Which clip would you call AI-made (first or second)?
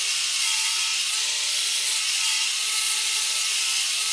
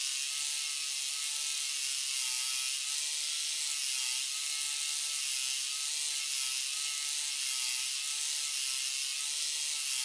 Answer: first